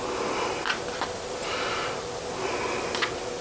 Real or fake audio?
real